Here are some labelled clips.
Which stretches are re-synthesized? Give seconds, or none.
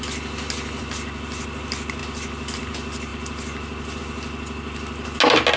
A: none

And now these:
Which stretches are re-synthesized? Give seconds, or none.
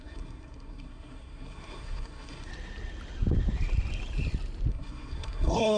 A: 0.0-2.5; 4.7-5.8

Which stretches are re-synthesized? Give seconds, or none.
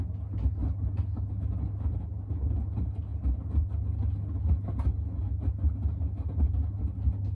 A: none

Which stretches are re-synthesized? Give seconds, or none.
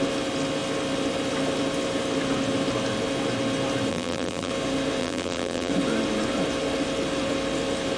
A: 3.9-4.5; 5.0-5.7